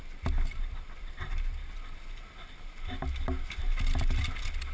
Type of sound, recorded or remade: recorded